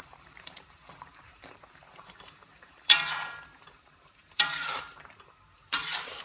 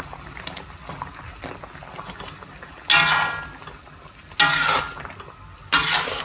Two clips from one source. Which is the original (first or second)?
second